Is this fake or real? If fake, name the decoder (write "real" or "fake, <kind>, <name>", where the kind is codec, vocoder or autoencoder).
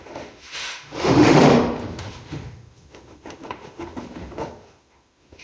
fake, autoencoder, DAC-VAE